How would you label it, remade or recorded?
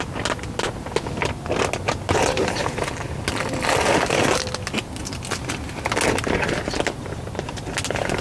recorded